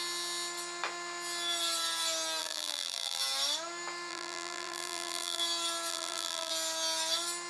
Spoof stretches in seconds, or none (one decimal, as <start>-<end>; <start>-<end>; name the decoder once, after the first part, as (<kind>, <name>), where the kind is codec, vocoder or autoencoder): 2.4-3.2 (vocoder, BigVGAN v2); 4.1-5.4; 5.9-6.5